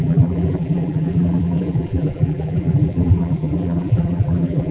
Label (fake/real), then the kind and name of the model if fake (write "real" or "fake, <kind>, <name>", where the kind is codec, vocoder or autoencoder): fake, vocoder, BigVGAN v2